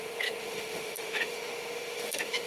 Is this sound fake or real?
fake